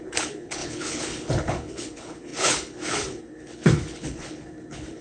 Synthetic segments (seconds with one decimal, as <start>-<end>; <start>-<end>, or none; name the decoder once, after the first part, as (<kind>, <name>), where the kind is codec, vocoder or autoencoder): 0.0-5.0 (codec, HILCodec)